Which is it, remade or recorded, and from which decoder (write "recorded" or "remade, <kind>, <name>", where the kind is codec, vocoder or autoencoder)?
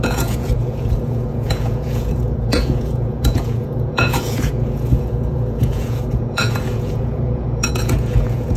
remade, vocoder, Vocos